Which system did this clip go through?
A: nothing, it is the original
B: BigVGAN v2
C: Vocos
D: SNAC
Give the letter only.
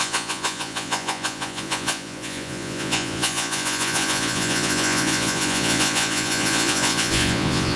C